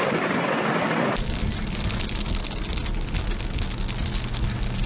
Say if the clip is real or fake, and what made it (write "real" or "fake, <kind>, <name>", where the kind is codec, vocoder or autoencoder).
real